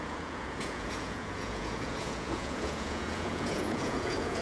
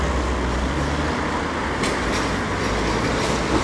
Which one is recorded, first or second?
second